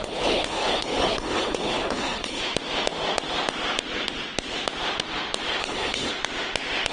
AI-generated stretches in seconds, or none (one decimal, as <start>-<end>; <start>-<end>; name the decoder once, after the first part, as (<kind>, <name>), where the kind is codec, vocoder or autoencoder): 0.0-2.4 (codec, HILCodec); 5.6-6.1